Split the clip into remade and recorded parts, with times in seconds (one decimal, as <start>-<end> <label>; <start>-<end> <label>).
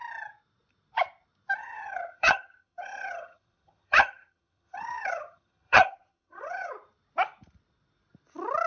0.0-1.6 recorded; 1.6-6.7 remade; 6.7-8.7 recorded